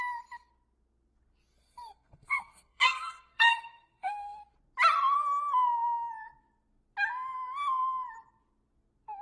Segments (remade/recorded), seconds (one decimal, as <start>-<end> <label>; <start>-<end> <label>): 0.0-1.6 recorded; 1.6-4.4 remade; 4.4-9.2 recorded